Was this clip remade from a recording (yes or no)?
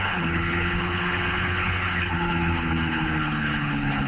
yes